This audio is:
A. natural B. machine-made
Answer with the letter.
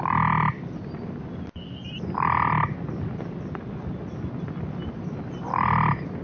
A